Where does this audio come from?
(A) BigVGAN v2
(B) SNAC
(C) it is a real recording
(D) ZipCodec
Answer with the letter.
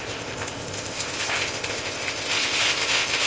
D